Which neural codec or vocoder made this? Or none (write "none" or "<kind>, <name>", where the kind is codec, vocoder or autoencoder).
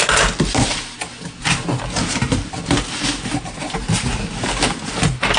none